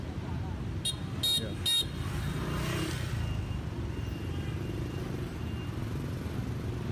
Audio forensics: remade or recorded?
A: recorded